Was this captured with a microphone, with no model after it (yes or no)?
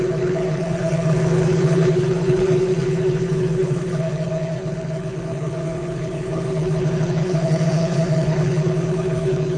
no